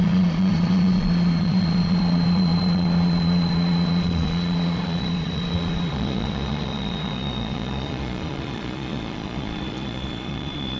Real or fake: fake